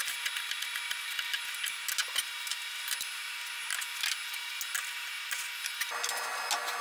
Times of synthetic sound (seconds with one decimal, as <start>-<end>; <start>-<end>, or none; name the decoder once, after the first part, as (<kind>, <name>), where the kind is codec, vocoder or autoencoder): none